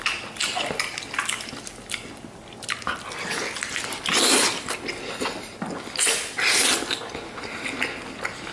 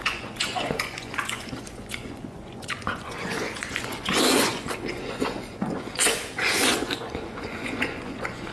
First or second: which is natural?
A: first